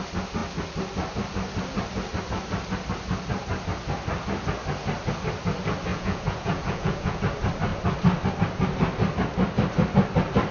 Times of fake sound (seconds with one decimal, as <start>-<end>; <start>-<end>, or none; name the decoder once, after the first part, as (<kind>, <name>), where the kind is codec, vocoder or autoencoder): 5.9-7.2 (vocoder, Vocos)